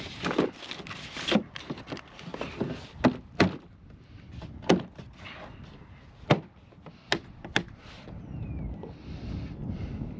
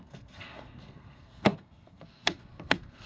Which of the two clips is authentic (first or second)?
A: first